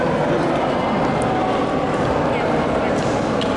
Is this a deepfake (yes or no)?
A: no